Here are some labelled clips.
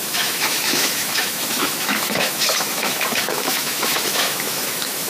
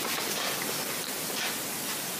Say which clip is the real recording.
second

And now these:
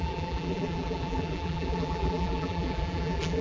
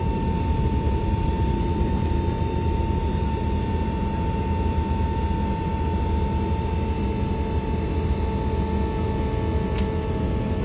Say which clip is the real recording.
second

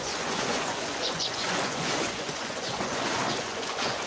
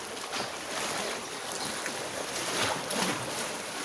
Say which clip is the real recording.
second